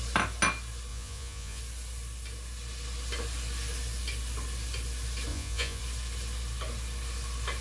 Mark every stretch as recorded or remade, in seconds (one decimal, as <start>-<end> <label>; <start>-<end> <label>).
0.0-0.9 recorded; 0.9-1.6 remade; 1.6-5.3 recorded; 5.3-5.8 remade; 5.8-7.6 recorded